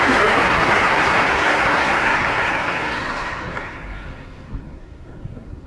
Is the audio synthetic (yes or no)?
yes